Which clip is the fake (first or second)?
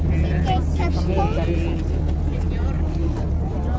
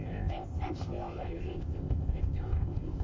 second